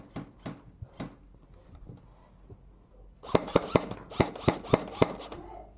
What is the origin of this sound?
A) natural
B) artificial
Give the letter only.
A